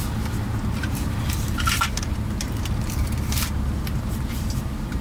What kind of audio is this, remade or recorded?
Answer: remade